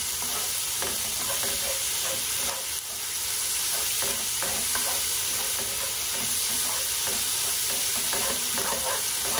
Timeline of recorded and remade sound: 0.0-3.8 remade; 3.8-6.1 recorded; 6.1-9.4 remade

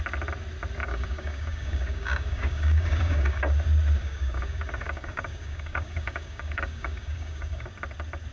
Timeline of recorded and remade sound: 0.0-0.8 recorded; 0.8-3.4 remade; 3.4-4.0 recorded; 4.0-7.7 remade; 7.7-8.3 recorded

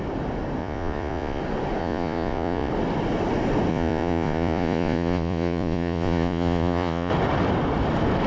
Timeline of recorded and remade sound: 0.0-0.6 recorded; 0.6-1.4 remade; 1.4-1.8 recorded; 1.8-2.7 remade; 2.7-3.7 recorded; 3.7-7.1 remade; 7.1-8.3 recorded

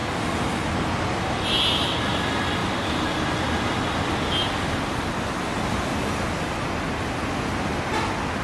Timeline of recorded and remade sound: 0.0-8.4 recorded

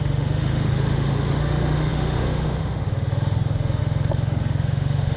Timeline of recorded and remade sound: 0.0-5.2 remade